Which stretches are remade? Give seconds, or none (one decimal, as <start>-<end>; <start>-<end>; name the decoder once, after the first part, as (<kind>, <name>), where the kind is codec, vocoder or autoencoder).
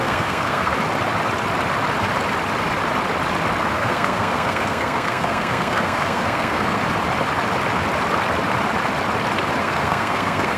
0.0-0.7 (codec, SNAC); 3.6-6.8; 9.6-10.6